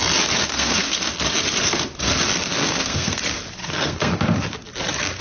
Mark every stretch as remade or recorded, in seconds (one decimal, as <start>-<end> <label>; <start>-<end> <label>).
0.0-0.4 recorded; 0.4-1.1 remade; 1.1-2.6 recorded; 2.6-3.2 remade; 3.2-3.6 recorded; 3.6-4.2 remade; 4.2-5.2 recorded